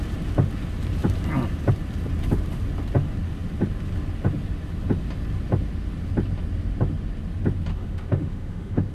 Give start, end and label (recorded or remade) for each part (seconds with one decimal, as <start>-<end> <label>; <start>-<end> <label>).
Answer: 0.0-7.7 recorded; 7.7-8.9 remade